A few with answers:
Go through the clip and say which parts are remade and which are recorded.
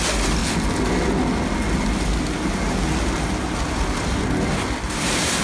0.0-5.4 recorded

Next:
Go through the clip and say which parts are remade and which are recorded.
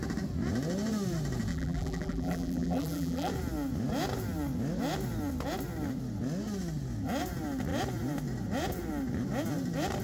0.0-1.5 recorded; 1.5-3.3 remade; 3.3-10.0 recorded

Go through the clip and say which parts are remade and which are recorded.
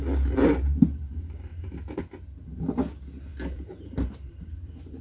0.0-1.5 recorded; 1.5-2.0 remade; 2.0-3.3 recorded; 3.3-5.0 remade